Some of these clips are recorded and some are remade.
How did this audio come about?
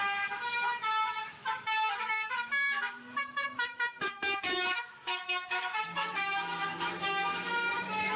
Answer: remade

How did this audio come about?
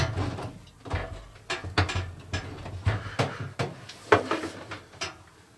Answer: recorded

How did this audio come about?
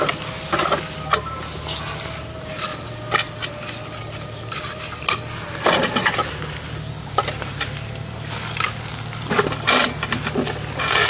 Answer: recorded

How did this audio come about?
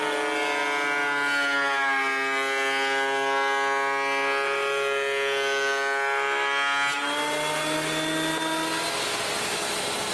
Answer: recorded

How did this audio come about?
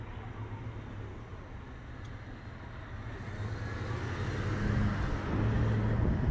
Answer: recorded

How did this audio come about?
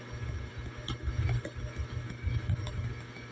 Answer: recorded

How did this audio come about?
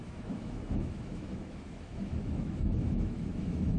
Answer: remade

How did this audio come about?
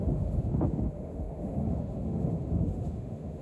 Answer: remade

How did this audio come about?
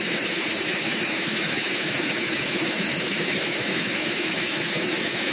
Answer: remade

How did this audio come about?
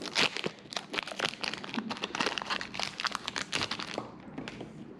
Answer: recorded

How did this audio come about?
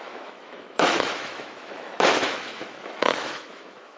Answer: remade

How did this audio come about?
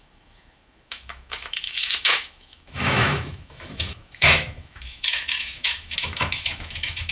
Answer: remade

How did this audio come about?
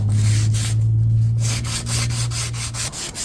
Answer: recorded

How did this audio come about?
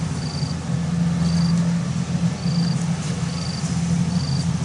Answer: recorded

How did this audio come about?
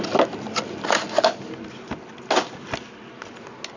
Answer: recorded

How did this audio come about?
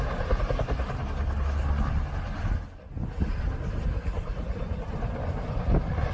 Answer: recorded